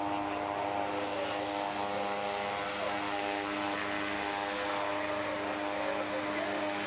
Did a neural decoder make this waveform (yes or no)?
no